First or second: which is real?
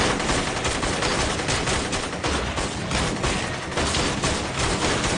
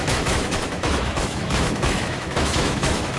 first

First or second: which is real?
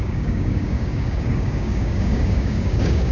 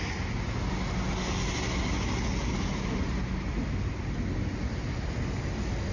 second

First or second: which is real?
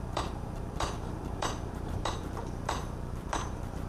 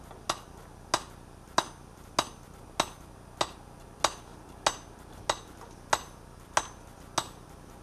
second